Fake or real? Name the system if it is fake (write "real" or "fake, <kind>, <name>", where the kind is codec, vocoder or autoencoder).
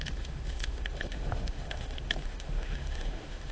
fake, autoencoder, DAC-VAE